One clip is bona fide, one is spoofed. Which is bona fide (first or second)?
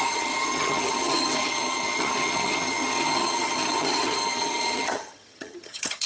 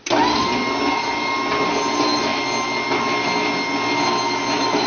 second